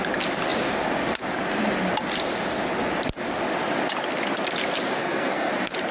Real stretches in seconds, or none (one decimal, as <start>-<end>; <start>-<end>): 0.0-5.0; 5.5-5.9